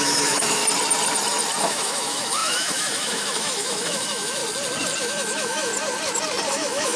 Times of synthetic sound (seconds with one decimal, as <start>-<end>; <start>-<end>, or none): 0.0-0.6; 1.6-4.4; 5.0-5.7; 6.5-7.0